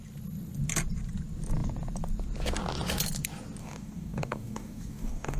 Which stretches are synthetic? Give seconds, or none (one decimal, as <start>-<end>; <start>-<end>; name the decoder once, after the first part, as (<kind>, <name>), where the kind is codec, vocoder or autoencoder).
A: 3.6-5.4 (codec, DAC)

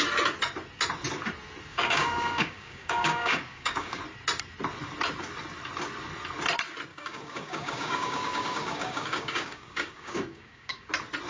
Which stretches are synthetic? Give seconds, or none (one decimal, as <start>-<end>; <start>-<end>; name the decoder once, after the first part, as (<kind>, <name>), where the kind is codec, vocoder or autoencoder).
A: 1.7-4.0 (codec, DAC); 6.9-10.9

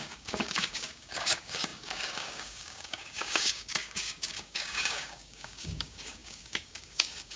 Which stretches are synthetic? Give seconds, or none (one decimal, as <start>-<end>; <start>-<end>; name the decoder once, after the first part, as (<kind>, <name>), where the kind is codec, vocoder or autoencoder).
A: 0.0-7.4 (codec, DAC)

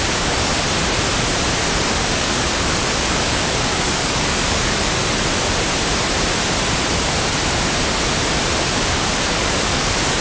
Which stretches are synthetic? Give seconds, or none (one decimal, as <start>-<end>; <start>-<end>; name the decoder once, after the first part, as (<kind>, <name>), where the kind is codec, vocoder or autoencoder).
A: 0.0-0.5 (codec, DAC); 1.9-5.0; 8.6-10.2